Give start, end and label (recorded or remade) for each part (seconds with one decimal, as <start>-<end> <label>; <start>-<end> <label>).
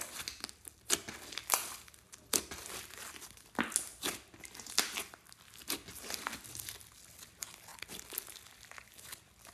0.0-9.5 recorded